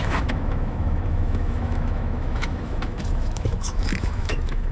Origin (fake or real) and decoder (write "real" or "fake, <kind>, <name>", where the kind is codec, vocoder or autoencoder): fake, autoencoder, DAC-VAE